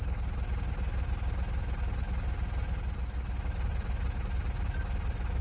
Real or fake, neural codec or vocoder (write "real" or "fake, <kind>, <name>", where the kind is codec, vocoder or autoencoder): real